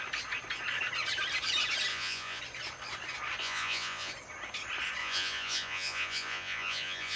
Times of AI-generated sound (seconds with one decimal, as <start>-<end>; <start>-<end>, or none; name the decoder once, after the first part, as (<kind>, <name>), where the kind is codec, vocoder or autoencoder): 1.9-2.4 (vocoder, Vocos); 3.4-4.1; 5.0-7.2